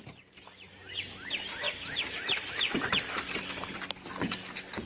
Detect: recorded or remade recorded